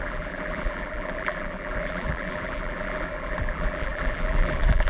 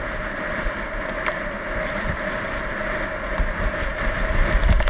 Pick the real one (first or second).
second